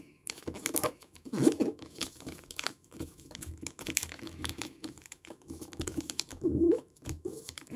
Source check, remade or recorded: remade